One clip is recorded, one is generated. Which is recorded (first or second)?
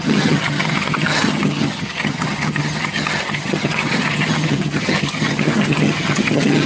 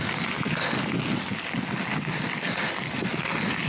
second